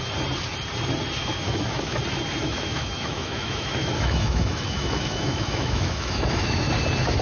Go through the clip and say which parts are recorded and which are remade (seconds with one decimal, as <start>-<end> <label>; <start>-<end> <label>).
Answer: 0.0-1.2 recorded; 1.2-2.0 remade; 2.0-2.4 recorded; 2.4-6.7 remade; 6.7-7.2 recorded